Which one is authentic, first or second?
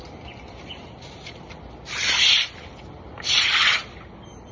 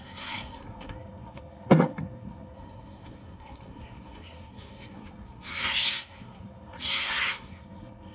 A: first